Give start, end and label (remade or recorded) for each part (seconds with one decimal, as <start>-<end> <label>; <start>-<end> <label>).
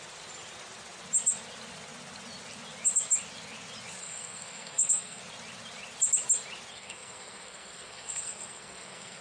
0.0-4.0 recorded; 4.0-5.2 remade; 5.2-6.7 recorded; 6.7-9.2 remade